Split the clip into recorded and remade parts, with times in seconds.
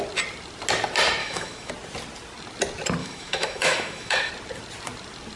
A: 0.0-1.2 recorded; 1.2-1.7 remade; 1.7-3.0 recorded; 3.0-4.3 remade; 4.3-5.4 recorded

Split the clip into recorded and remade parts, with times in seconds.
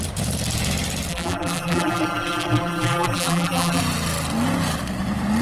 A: 0.0-1.1 recorded; 1.1-3.8 remade; 3.8-5.4 recorded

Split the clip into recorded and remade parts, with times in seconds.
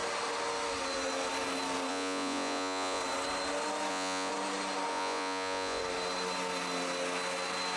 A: 0.0-1.9 recorded; 1.9-3.0 remade; 3.0-3.9 recorded; 3.9-4.3 remade; 4.3-4.9 recorded; 4.9-5.8 remade; 5.8-7.8 recorded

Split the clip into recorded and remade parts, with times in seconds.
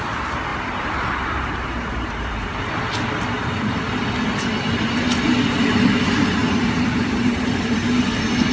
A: 0.0-0.5 recorded; 0.5-2.6 remade; 2.6-6.4 recorded; 6.4-7.9 remade; 7.9-8.5 recorded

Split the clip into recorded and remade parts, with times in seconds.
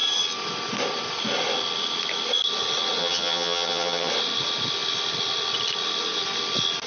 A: 0.0-3.0 recorded; 3.0-4.1 remade; 4.1-6.9 recorded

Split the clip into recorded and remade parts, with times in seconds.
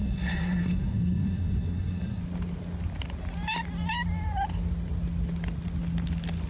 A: 0.0-2.2 remade; 2.2-6.5 recorded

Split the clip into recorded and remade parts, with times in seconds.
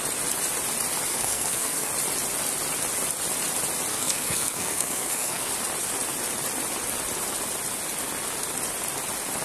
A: 0.0-1.1 recorded; 1.1-1.9 remade; 1.9-3.9 recorded; 3.9-5.5 remade; 5.5-9.4 recorded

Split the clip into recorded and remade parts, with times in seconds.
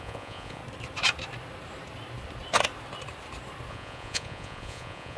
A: 0.0-0.6 remade; 0.6-3.7 recorded; 3.7-5.2 remade